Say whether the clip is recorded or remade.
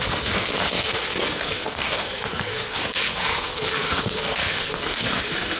remade